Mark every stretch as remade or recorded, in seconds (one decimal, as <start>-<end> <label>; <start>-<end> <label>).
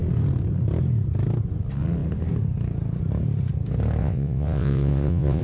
0.0-4.0 recorded; 4.0-5.4 remade